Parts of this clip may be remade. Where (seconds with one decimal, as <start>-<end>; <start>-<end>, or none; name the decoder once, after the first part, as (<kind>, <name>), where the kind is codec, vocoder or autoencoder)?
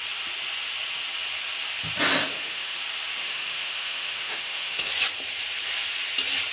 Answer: 2.2-2.8 (autoencoder, DAC-VAE); 3.2-4.9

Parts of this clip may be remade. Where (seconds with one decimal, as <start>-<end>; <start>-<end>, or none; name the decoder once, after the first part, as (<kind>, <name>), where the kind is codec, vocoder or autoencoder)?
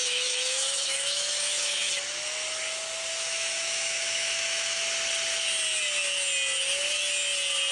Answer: 0.0-1.9 (autoencoder, DAC-VAE); 3.1-4.8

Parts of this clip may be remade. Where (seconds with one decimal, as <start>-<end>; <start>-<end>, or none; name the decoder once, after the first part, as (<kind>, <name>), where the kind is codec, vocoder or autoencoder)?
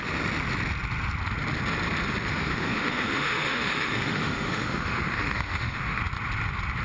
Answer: 2.3-6.0 (autoencoder, DAC-VAE)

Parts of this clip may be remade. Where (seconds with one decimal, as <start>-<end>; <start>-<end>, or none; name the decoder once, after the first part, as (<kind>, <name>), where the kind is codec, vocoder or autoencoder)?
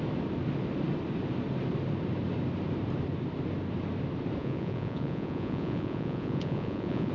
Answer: 4.4-7.1 (vocoder, Vocos)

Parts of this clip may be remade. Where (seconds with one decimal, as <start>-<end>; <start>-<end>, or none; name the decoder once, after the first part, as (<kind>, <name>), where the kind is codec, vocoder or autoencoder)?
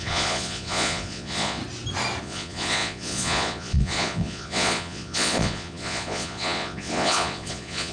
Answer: 0.0-1.6 (vocoder, Vocos); 2.2-7.9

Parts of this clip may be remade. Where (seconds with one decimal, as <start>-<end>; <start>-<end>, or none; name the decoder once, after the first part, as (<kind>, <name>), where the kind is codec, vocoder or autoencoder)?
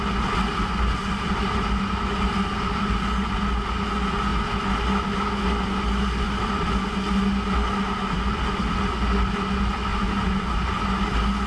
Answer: 0.5-1.5 (vocoder, BigVGAN v2); 9.9-10.7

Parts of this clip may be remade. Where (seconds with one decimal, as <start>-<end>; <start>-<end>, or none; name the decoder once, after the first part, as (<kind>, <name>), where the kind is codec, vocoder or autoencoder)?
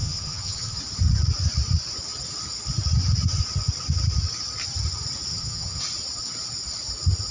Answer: 0.0-0.8 (vocoder, HiFi-GAN); 5.3-5.8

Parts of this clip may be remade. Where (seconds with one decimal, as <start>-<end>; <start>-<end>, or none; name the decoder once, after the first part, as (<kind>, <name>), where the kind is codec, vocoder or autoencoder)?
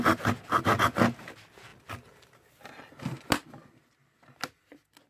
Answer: none